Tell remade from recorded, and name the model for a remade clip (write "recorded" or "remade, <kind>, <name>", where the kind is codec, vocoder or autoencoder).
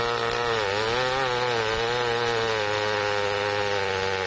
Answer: recorded